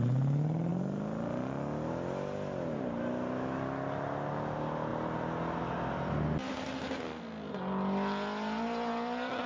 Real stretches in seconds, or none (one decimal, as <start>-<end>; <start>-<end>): 0.0-9.5